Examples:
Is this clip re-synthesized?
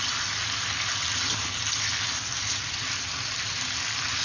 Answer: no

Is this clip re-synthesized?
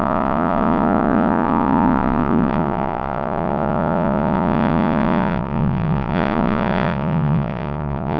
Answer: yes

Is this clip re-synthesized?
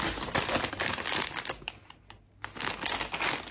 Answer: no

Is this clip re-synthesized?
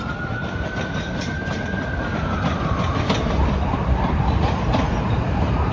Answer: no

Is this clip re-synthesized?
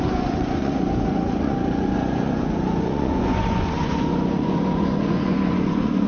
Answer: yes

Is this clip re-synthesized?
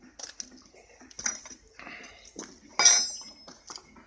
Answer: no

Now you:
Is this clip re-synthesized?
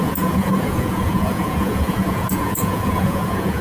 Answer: yes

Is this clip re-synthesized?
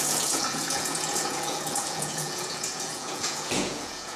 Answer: yes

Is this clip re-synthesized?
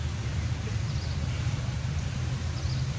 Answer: no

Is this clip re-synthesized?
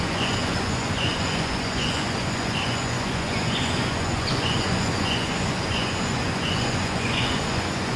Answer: yes